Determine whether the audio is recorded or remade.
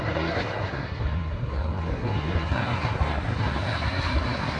remade